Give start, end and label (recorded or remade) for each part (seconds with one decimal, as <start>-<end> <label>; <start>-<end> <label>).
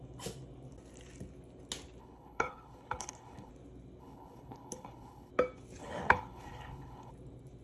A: 0.0-2.0 recorded; 2.0-3.5 remade; 3.5-4.0 recorded; 4.0-5.3 remade; 5.3-5.8 recorded; 5.8-7.1 remade; 7.1-7.6 recorded